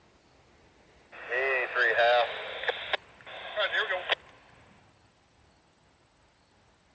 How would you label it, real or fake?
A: real